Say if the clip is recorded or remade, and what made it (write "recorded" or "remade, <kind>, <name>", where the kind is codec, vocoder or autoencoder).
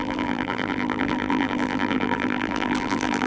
remade, vocoder, BigVGAN v2